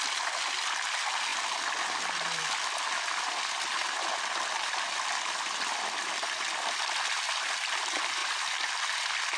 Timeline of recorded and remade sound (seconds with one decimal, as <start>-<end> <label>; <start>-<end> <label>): 0.0-1.3 recorded; 1.3-2.4 remade; 2.4-3.8 recorded; 3.8-7.6 remade; 7.6-8.2 recorded; 8.2-8.7 remade; 8.7-9.4 recorded